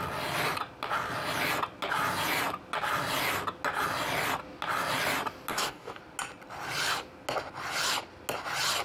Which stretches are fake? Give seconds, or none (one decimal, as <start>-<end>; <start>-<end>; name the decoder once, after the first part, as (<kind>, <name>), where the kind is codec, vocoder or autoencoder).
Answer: 5.5-6.0 (codec, DAC)